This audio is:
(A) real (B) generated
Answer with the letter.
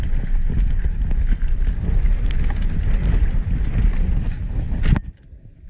A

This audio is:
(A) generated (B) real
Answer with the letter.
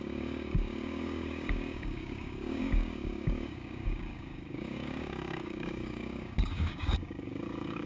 A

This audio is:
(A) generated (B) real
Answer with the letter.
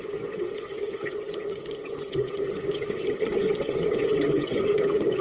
A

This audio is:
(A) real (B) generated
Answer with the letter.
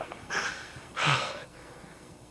B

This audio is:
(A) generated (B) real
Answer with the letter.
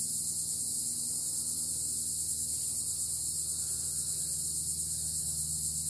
B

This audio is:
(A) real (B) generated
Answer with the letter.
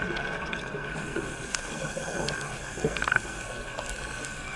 B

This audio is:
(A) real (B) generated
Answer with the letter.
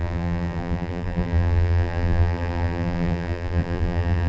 B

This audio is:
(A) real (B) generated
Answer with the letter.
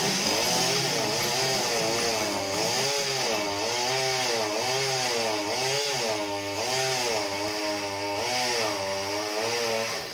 A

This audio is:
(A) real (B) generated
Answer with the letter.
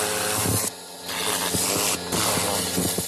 A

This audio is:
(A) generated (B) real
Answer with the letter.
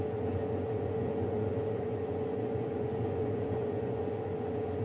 A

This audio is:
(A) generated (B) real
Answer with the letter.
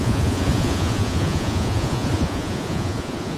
A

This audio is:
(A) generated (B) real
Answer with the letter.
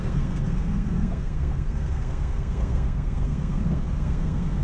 A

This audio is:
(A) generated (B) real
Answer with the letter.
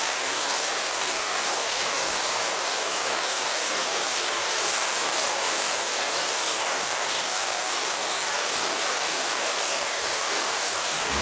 A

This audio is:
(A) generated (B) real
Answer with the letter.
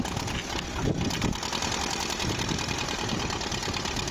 B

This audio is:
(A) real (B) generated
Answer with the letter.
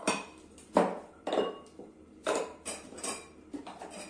A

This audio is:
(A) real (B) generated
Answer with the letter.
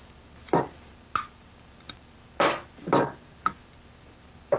A